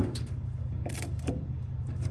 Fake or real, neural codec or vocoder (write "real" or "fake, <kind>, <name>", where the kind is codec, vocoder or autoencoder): fake, codec, DAC